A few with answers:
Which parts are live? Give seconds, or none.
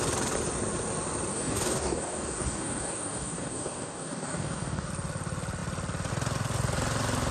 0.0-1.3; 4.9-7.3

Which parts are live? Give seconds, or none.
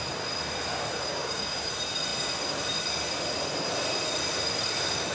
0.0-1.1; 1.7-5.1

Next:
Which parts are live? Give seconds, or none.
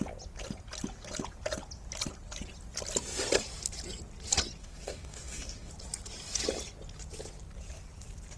0.0-4.6; 5.7-8.4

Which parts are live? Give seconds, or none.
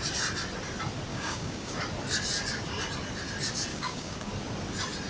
0.0-1.1; 1.8-3.7; 4.3-5.1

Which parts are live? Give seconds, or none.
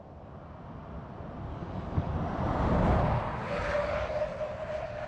0.0-1.5; 2.1-3.4; 4.2-5.1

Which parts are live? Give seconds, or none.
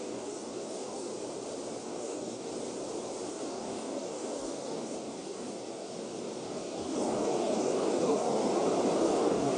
1.1-1.8; 2.5-3.3; 8.5-9.0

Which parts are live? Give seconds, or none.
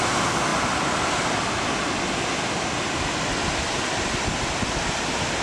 0.0-5.4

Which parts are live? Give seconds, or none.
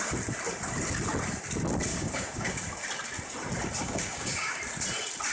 0.0-1.9; 2.5-3.8; 4.6-5.3